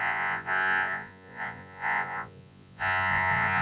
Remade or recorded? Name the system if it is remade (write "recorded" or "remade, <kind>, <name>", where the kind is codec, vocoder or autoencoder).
remade, vocoder, Vocos